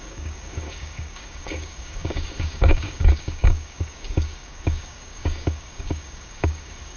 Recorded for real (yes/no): no